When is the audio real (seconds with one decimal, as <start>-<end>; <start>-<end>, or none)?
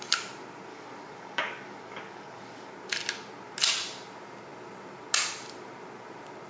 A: 0.0-0.7; 2.7-6.5